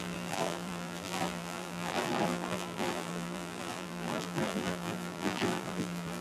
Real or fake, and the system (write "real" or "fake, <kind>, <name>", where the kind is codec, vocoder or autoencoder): fake, vocoder, BigVGAN v2